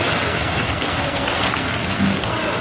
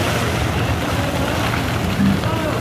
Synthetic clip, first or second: first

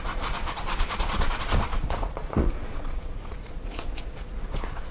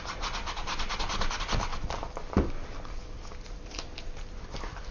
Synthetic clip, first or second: first